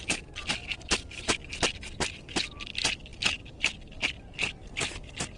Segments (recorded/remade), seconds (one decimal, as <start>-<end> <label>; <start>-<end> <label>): 0.0-5.4 recorded